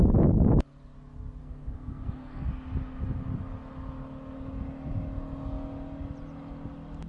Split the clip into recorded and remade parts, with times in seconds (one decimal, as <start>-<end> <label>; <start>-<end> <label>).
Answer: 0.0-1.4 recorded; 1.4-2.5 remade; 2.5-7.1 recorded